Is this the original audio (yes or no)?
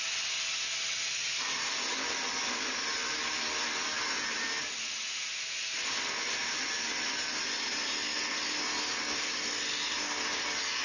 yes